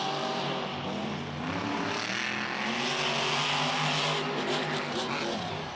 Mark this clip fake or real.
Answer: real